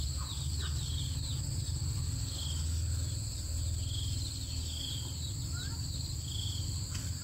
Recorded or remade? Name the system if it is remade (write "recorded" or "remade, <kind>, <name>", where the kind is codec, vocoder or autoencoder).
recorded